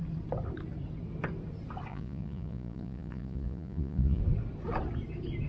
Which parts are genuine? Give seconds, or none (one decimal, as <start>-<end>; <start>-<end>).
0.0-1.9; 4.2-5.5